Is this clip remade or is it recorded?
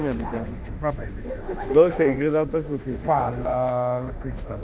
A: remade